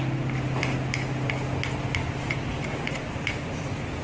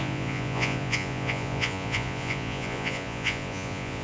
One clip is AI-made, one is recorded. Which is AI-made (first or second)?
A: second